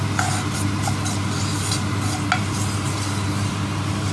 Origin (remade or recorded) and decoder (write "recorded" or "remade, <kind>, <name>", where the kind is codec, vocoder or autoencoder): recorded